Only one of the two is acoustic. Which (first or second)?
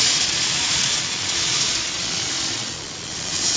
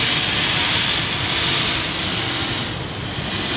second